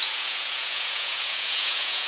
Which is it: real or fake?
fake